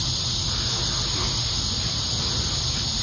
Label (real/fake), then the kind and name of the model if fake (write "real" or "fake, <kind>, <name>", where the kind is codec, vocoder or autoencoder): real